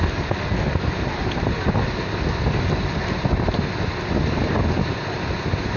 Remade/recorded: recorded